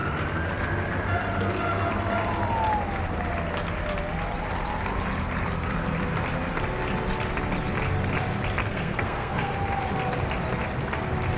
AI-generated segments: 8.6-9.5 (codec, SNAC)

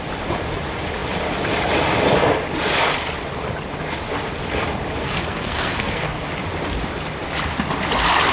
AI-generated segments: 5.0-6.3 (codec, SNAC)

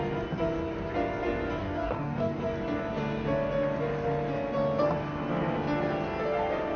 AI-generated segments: 1.6-2.4 (codec, DAC)

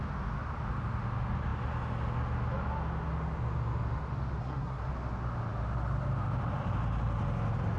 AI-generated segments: 4.4-4.9 (codec, SNAC)

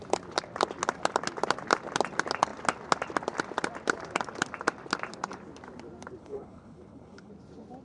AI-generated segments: 6.2-7.3 (codec, HILCodec)

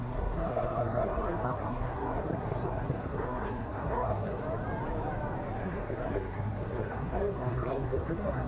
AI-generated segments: 0.0-4.4 (codec, SNAC); 5.6-8.5

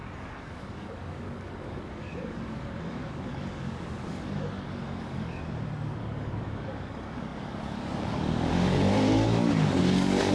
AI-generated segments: 0.0-5.4 (codec, DAC); 6.0-10.3